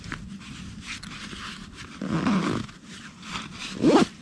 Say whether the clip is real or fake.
real